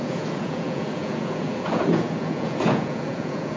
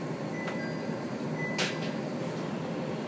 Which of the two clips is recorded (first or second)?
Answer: second